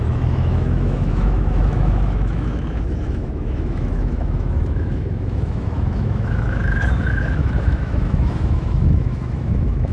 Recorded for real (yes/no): no